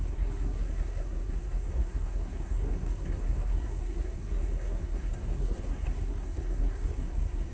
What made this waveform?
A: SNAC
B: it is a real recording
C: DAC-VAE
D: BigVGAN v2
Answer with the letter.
A